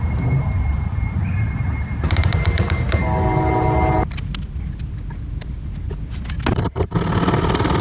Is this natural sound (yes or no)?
yes